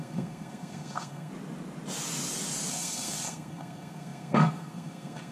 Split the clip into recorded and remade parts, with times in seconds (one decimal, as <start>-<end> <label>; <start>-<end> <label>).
0.0-1.3 remade; 1.3-2.7 recorded; 2.7-5.3 remade